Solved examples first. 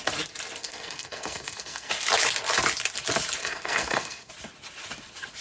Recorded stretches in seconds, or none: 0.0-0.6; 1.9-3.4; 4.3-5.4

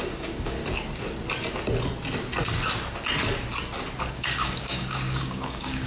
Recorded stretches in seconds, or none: 0.6-4.1

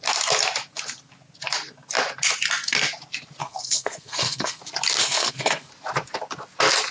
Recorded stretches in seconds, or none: 0.0-3.4; 4.6-5.0; 5.7-6.9

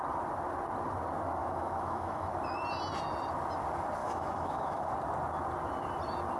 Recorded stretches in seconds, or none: 0.0-1.4; 2.3-4.0; 4.9-6.4

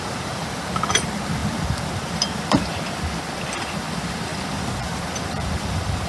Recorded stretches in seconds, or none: none

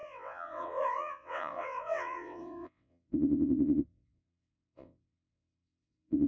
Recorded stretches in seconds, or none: none

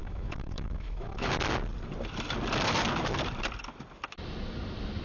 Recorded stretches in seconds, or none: 1.3-5.0

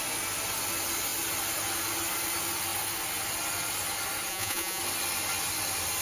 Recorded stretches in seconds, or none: 0.0-4.3; 4.8-6.0